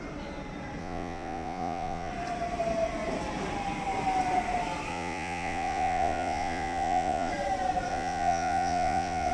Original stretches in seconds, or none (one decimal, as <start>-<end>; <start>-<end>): 0.0-0.8; 2.1-4.9; 7.3-7.9